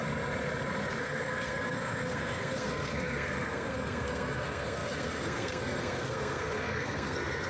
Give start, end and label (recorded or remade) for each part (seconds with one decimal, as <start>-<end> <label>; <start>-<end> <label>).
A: 0.0-1.0 recorded; 1.0-7.5 remade